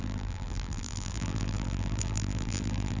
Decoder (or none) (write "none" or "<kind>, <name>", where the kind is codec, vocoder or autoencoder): vocoder, BigVGAN v2